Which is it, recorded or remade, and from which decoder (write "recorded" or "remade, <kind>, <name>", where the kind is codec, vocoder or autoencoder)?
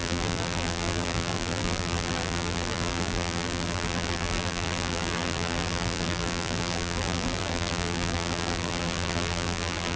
remade, vocoder, BigVGAN v2